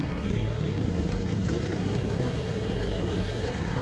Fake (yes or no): yes